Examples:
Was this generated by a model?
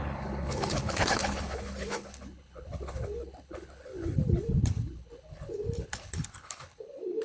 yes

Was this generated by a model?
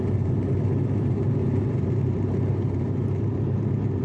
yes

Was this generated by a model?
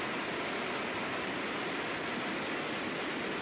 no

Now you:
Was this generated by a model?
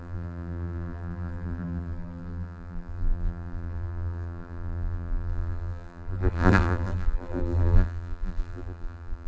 yes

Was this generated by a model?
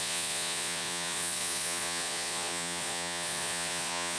yes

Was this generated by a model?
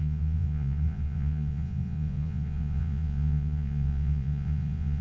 yes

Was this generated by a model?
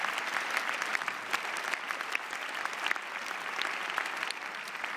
no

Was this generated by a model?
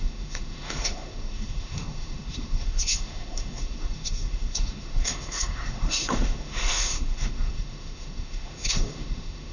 yes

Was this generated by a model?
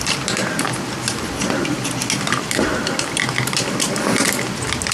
no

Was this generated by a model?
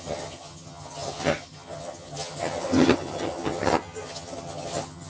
yes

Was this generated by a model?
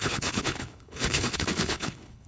yes